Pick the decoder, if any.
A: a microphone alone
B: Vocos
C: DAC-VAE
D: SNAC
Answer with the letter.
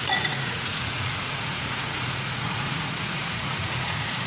B